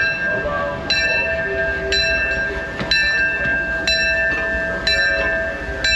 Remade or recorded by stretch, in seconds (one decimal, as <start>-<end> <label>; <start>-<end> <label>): 0.0-6.0 recorded

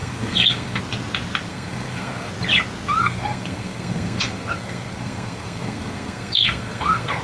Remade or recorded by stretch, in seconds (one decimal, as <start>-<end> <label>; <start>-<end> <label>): 0.0-0.8 remade; 0.8-1.5 recorded; 1.5-2.3 remade; 2.3-3.0 recorded; 3.0-7.2 remade

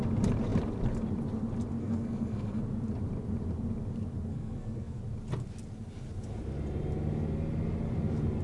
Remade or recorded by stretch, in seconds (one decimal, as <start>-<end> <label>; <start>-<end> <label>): 0.0-1.8 recorded; 1.8-2.6 remade; 2.6-4.3 recorded; 4.3-5.0 remade; 5.0-8.4 recorded

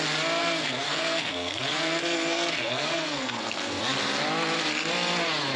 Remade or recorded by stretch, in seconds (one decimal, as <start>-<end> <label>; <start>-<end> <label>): 0.0-0.4 recorded; 0.4-3.8 remade; 3.8-5.6 recorded